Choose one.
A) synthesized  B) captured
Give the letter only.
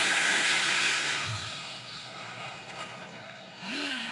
A